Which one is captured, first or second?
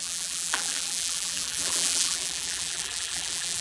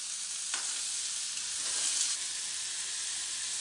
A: second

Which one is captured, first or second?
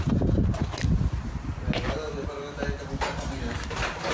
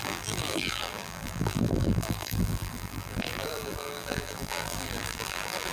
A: first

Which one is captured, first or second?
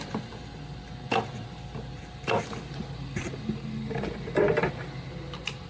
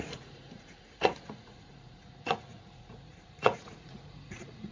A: first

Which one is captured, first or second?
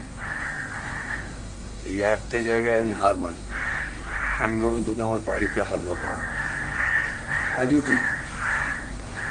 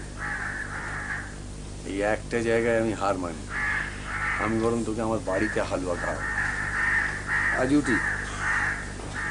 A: second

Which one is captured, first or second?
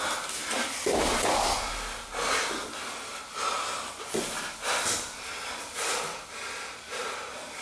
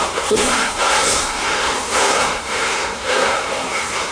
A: first